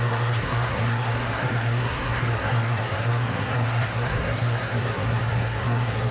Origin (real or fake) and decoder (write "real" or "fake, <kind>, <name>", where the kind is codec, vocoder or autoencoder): fake, codec, SNAC